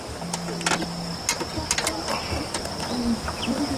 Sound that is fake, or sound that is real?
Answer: real